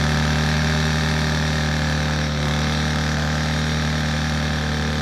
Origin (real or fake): real